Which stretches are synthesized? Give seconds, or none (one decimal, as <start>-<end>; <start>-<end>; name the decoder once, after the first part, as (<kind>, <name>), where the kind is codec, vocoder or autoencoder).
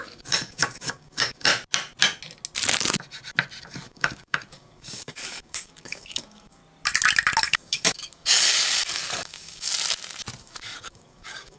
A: 0.0-1.5 (codec, DAC); 3.6-6.6; 7.4-9.7; 10.4-11.6